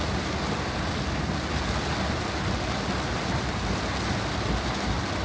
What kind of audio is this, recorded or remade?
recorded